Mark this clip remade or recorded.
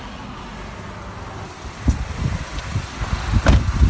recorded